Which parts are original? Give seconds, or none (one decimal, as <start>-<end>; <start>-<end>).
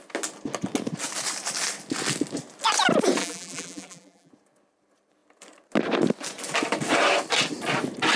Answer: 0.0-3.2; 4.3-8.2